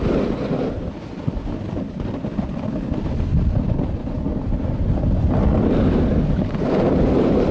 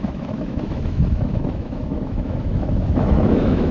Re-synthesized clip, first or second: second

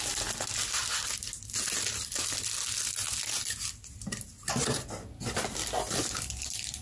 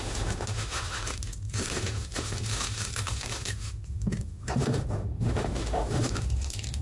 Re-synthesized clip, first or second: second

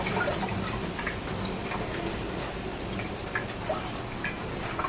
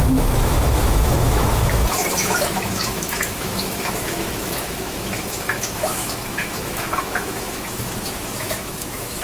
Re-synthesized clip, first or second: second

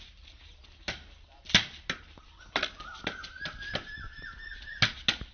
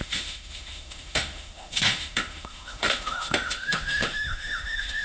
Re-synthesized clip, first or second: second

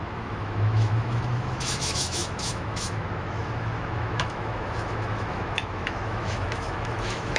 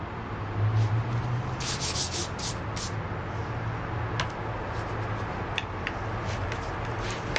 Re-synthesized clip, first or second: first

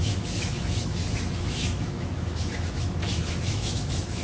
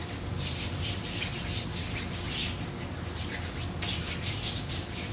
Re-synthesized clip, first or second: first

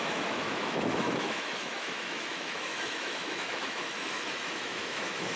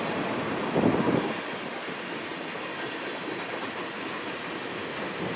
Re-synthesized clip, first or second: first